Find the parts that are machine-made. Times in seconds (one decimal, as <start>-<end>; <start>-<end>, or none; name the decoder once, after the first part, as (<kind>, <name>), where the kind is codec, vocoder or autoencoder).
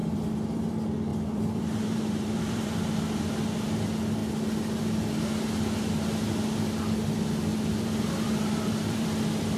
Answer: 0.0-0.7 (vocoder, BigVGAN v2); 1.1-2.8; 7.5-9.6